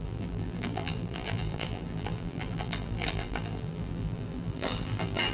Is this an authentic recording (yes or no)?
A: no